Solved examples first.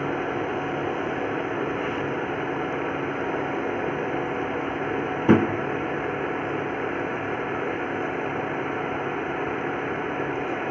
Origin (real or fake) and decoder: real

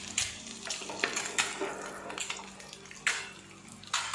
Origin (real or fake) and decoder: real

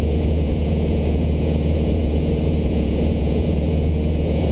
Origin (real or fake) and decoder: fake, vocoder, Vocos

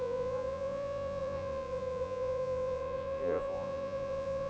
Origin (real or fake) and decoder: fake, vocoder, Vocos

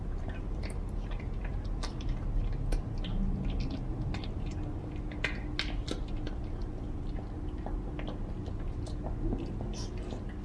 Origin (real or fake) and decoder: real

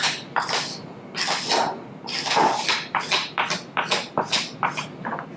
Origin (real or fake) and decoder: real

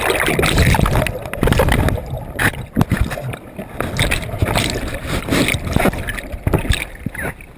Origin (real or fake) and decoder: real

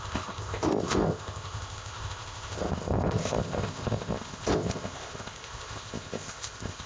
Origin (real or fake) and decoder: fake, codec, ZipCodec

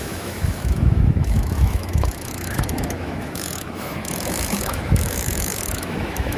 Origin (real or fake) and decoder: fake, autoencoder, DAC-VAE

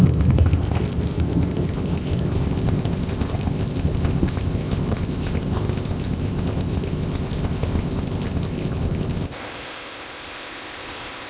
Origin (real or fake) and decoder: fake, codec, ZipCodec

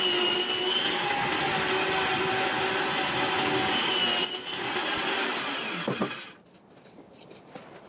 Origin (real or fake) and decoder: real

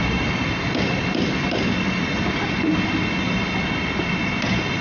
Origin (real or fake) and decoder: real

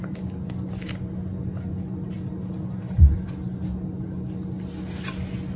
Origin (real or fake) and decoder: real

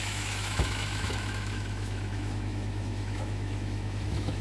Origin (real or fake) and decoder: fake, autoencoder, DAC-VAE